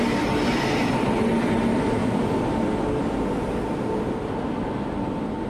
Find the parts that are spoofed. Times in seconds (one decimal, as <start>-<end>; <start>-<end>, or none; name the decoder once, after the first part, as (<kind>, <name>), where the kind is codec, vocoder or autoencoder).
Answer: none

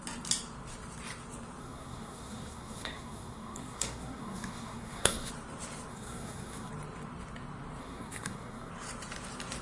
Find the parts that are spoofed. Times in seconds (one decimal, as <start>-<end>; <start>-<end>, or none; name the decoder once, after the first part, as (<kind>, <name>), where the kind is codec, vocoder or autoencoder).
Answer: 1.6-5.3 (codec, SNAC); 5.9-6.7; 7.8-8.7

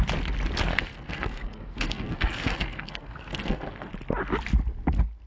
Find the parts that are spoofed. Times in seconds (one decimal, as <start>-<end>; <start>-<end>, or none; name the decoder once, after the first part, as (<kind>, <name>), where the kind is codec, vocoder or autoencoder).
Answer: 0.7-3.9 (codec, SNAC)